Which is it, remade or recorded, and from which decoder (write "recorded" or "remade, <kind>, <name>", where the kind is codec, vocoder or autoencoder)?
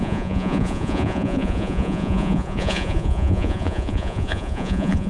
remade, vocoder, Vocos